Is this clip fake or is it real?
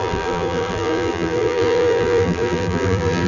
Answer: fake